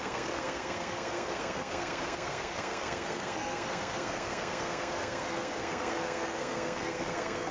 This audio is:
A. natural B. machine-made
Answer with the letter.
B